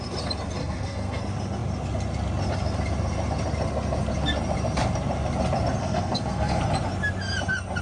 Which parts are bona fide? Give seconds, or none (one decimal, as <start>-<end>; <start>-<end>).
0.0-0.6; 1.2-5.8; 6.6-7.8